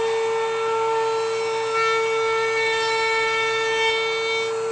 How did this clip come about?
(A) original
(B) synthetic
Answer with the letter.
A